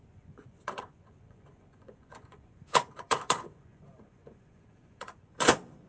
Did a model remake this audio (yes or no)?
yes